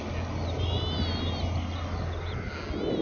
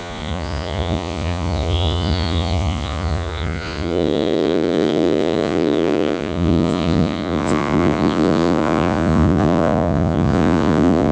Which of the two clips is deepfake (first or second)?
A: second